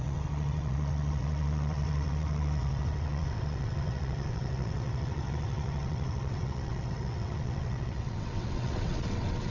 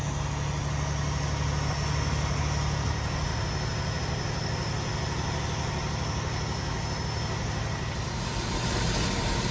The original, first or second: second